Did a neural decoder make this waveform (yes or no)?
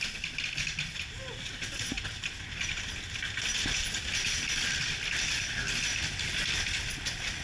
no